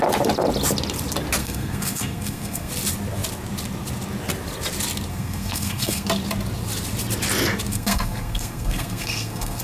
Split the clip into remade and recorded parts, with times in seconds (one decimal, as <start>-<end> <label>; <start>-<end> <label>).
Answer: 0.0-1.4 recorded; 1.4-2.7 remade; 2.7-5.1 recorded; 5.1-6.1 remade; 6.1-7.7 recorded; 7.7-9.6 remade